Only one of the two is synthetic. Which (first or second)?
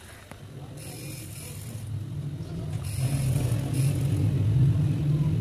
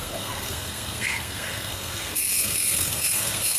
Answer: second